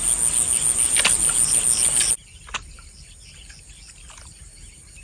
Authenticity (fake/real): real